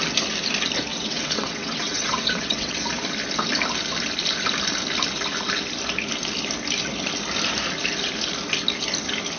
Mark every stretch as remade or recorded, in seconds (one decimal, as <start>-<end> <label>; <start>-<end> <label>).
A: 0.0-0.9 recorded; 0.9-2.8 remade; 2.8-9.4 recorded

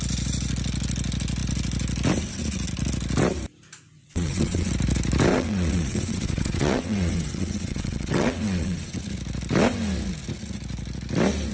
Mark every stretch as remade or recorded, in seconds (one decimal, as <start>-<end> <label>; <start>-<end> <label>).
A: 0.0-4.0 recorded; 4.0-4.7 remade; 4.7-5.3 recorded; 5.3-9.0 remade; 9.0-11.5 recorded

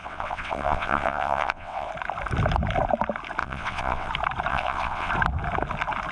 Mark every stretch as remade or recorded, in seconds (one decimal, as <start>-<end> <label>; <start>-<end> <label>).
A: 0.0-1.9 remade; 1.9-3.4 recorded; 3.4-4.1 remade; 4.1-4.5 recorded; 4.5-5.1 remade; 5.1-6.1 recorded

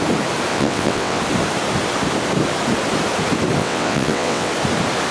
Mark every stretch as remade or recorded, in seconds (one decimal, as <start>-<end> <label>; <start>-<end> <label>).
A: 0.0-0.5 recorded; 0.5-1.2 remade; 1.2-3.6 recorded; 3.6-4.5 remade; 4.5-5.1 recorded

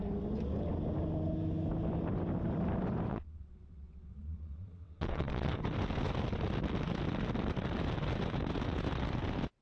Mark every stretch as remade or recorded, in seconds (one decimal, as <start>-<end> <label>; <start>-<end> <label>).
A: 0.0-3.1 recorded; 3.1-5.6 remade; 5.6-9.6 recorded